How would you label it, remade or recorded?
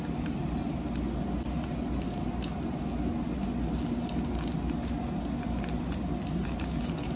recorded